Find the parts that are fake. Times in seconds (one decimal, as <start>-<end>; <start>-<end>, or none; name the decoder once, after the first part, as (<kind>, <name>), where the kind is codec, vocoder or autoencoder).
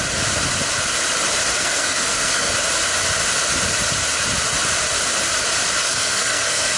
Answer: 1.5-2.5 (codec, SNAC); 5.8-6.8